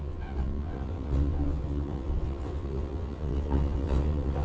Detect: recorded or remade remade